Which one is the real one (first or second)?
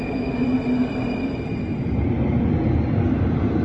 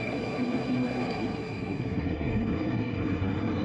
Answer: first